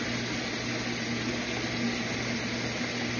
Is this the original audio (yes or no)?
yes